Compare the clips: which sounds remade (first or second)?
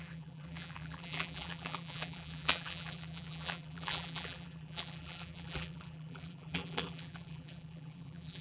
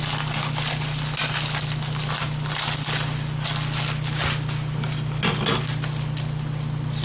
first